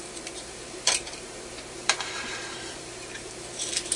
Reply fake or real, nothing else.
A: fake